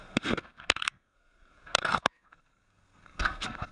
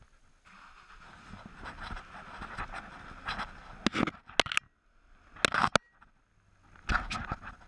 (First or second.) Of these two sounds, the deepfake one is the first